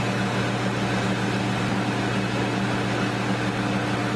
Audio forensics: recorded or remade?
recorded